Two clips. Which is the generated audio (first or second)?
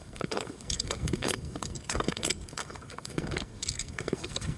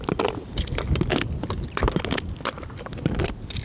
first